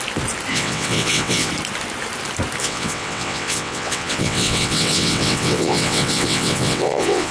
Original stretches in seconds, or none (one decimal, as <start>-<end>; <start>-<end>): 0.0-0.5; 1.5-2.6